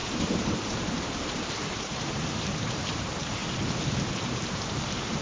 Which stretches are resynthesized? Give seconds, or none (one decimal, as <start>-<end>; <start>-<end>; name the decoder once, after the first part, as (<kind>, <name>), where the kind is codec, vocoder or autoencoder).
0.0-3.4 (vocoder, BigVGAN v2); 4.3-5.2